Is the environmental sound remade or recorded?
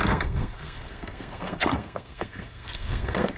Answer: remade